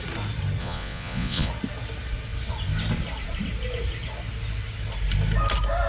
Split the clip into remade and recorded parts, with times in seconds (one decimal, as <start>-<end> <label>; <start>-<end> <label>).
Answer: 0.0-0.6 recorded; 0.6-1.5 remade; 1.5-5.9 recorded